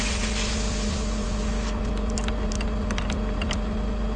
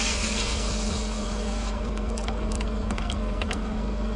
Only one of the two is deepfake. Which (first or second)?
second